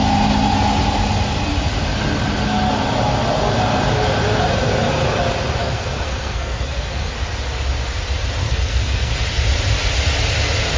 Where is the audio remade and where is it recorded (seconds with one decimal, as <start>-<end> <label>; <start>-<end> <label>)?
0.0-5.6 recorded; 5.6-7.1 remade; 7.1-8.4 recorded; 8.4-9.1 remade; 9.1-10.8 recorded